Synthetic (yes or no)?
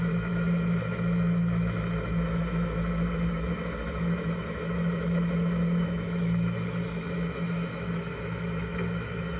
yes